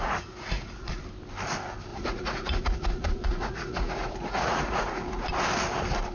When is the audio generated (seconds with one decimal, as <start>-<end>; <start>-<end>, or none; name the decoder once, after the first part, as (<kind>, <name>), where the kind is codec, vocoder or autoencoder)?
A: 0.0-1.0 (vocoder, Vocos); 1.9-5.3

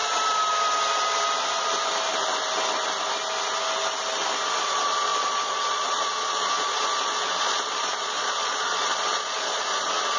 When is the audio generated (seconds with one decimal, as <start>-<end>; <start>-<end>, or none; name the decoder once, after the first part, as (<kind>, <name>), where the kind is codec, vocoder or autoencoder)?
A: 4.6-10.2 (vocoder, Vocos)

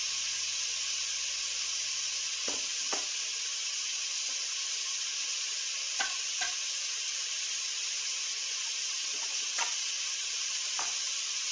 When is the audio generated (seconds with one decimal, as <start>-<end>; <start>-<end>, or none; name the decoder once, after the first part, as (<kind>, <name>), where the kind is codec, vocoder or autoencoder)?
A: 0.0-11.5 (vocoder, Vocos)

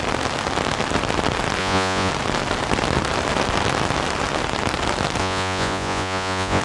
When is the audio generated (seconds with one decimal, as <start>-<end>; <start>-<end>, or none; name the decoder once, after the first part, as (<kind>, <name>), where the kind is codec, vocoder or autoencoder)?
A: 1.6-2.1 (vocoder, Vocos); 5.2-6.6

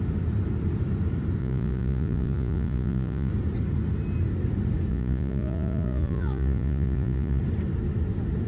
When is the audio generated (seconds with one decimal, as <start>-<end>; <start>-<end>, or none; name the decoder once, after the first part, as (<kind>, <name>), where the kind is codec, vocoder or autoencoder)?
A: 1.4-3.3 (vocoder, Vocos); 4.9-7.4

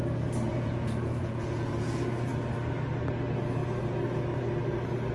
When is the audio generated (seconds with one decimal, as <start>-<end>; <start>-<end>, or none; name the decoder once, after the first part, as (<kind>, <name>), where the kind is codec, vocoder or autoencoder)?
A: 0.5-2.3 (vocoder, Vocos)